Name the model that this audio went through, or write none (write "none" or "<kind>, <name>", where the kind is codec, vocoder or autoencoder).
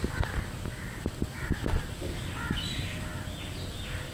none